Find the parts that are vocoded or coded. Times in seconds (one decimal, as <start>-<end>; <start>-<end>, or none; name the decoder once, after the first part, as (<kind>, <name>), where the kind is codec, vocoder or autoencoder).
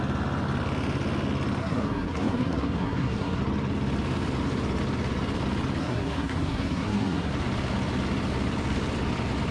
1.6-3.4 (codec, SNAC); 5.8-7.3